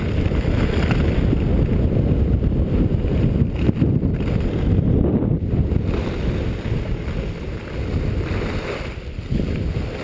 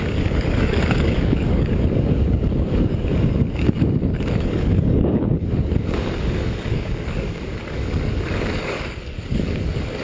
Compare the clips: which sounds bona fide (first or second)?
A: first